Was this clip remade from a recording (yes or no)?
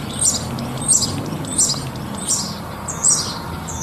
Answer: yes